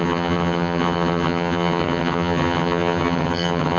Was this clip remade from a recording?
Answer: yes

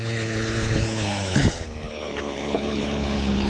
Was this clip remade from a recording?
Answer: yes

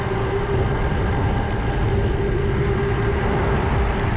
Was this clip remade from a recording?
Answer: no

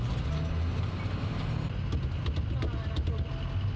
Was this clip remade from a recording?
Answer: no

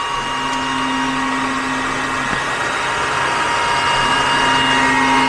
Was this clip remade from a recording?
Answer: no